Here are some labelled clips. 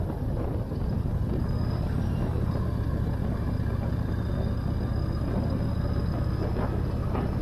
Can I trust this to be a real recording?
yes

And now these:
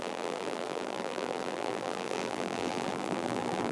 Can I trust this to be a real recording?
no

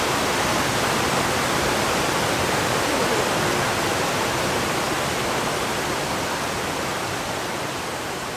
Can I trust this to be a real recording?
yes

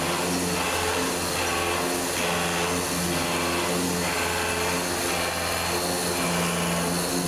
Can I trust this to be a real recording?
yes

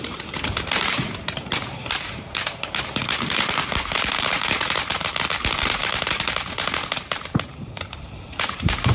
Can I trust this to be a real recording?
no